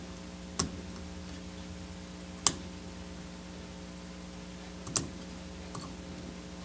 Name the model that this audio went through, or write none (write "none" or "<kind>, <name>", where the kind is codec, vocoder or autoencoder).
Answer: none